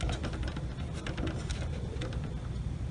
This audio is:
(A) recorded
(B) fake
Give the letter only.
A